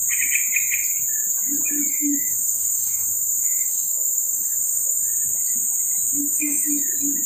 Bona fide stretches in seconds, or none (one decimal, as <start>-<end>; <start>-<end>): 0.0-1.9; 5.1-6.2; 6.7-7.3